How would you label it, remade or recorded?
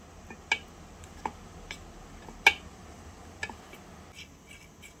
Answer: recorded